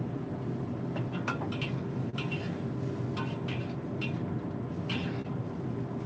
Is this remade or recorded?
recorded